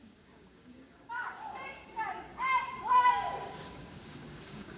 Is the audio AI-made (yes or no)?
yes